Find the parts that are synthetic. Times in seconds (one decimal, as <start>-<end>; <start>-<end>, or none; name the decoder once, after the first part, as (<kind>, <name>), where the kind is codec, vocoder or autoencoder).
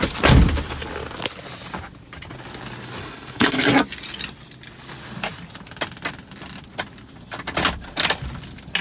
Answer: 3.0-3.7 (codec, SNAC)